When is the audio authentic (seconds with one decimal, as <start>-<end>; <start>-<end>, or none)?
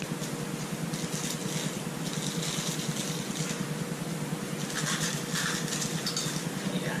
0.0-7.0